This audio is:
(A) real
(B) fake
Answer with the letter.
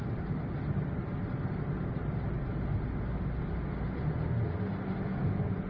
A